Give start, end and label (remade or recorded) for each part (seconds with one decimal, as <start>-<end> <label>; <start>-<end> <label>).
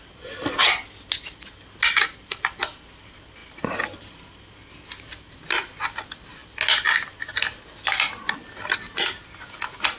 0.0-3.4 recorded; 3.4-4.8 remade; 4.8-10.0 recorded